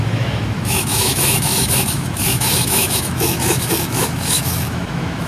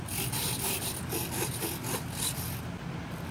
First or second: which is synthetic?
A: first